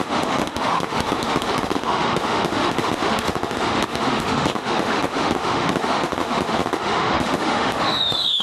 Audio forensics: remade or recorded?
remade